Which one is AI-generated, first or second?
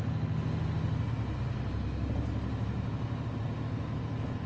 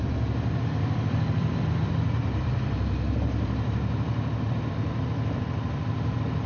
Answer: second